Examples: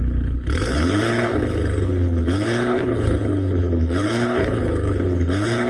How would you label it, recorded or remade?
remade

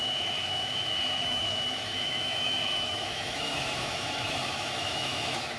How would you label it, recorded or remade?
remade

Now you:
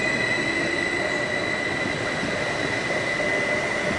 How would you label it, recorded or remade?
recorded